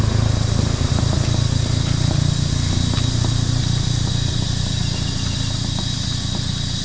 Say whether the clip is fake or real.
real